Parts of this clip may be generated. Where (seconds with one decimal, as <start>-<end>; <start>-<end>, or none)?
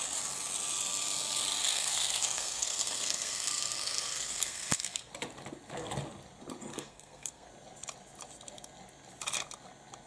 1.6-5.1; 6.7-7.5